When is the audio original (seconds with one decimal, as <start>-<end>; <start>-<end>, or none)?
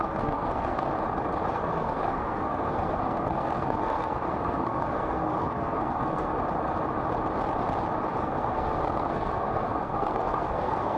0.9-1.5; 6.3-8.2